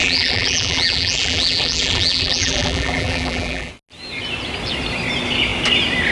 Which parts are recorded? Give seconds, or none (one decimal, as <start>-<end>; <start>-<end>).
3.7-6.1